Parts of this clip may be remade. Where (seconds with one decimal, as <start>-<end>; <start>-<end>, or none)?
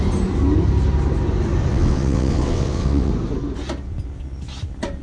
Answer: 1.7-3.1